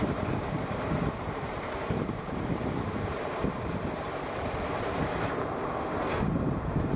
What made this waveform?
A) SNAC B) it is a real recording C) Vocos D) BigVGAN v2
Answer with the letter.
D